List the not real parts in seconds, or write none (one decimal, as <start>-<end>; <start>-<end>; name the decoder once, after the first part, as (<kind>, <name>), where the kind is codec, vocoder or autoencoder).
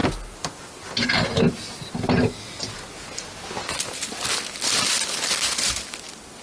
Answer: none